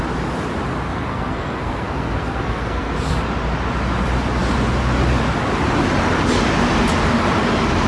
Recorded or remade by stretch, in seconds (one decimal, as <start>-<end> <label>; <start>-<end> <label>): 0.0-0.9 recorded; 0.9-2.9 remade; 2.9-7.9 recorded